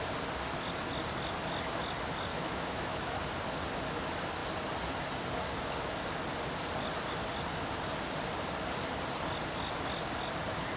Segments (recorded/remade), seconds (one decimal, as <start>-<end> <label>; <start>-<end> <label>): 0.0-2.3 recorded; 2.3-3.2 remade; 3.2-10.8 recorded